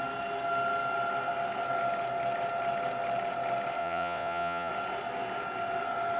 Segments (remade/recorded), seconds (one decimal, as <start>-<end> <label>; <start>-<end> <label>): 0.0-3.8 recorded; 3.8-4.7 remade; 4.7-6.2 recorded